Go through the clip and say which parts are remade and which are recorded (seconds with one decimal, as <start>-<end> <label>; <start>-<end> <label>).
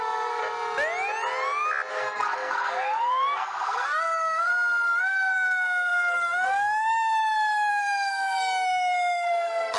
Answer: 0.0-0.4 remade; 0.4-1.9 recorded; 1.9-4.5 remade; 4.5-5.0 recorded; 5.0-9.8 remade